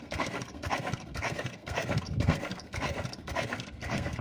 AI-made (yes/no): yes